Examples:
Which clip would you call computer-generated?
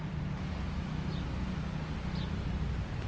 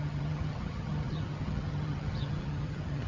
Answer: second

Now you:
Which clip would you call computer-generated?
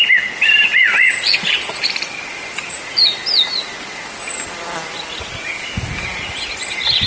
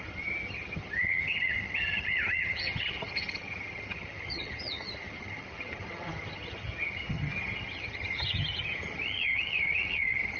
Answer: second